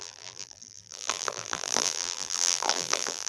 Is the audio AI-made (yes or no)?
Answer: yes